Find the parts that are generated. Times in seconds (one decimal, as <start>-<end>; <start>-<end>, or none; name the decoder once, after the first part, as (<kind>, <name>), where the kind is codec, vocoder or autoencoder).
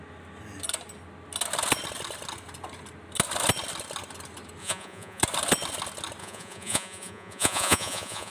4.6-5.2 (vocoder, Vocos); 6.2-8.3